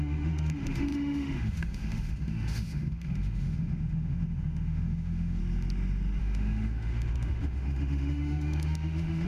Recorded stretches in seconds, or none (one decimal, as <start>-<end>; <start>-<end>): 5.4-6.2